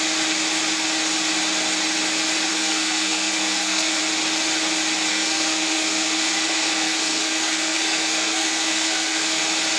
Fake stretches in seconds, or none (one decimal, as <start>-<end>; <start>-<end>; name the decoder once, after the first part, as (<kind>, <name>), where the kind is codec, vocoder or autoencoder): 2.5-4.0 (codec, SNAC); 5.1-9.4